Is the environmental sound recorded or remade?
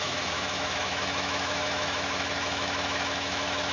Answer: remade